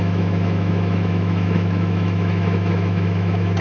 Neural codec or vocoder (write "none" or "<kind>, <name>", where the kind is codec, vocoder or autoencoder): autoencoder, DAC-VAE